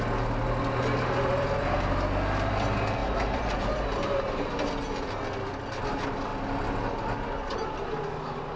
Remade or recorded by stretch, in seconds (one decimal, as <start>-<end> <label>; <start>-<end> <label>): 0.0-3.0 recorded; 3.0-4.5 remade; 4.5-8.6 recorded